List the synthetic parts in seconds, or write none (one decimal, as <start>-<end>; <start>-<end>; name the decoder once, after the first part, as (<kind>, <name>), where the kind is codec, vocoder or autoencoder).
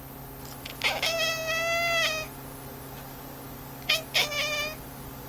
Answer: none